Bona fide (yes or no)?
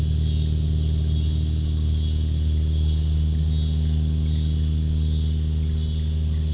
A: yes